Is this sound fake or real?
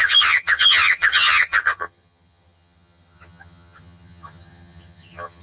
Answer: fake